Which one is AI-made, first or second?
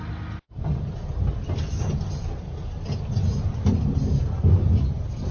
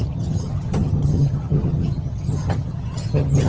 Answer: second